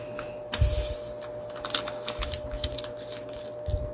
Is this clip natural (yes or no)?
yes